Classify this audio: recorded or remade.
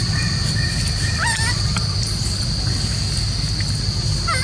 recorded